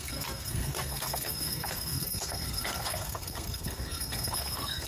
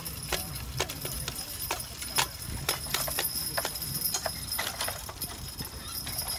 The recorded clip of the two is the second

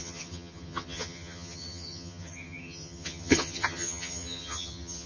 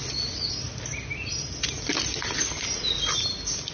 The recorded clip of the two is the second